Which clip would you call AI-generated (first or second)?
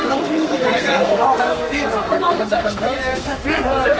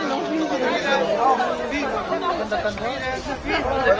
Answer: first